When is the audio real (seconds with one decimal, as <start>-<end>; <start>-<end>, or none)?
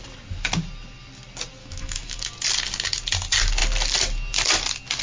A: 0.0-1.6; 2.3-5.0